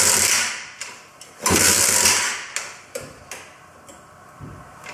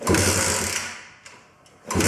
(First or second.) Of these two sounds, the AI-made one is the first